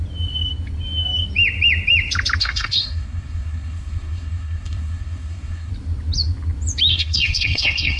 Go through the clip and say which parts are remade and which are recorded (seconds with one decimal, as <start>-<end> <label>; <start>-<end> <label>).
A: 0.0-2.4 recorded; 2.4-5.7 remade; 5.7-6.9 recorded; 6.9-8.0 remade